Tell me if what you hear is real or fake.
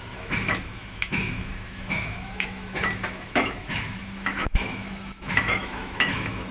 fake